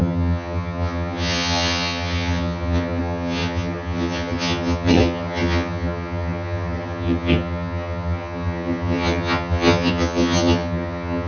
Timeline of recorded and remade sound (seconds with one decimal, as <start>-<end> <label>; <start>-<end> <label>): 0.0-11.3 remade